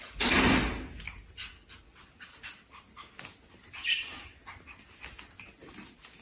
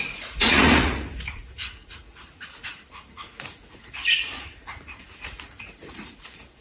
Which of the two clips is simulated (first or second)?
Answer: second